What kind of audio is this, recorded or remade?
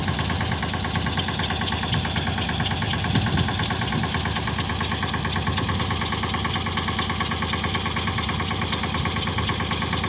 recorded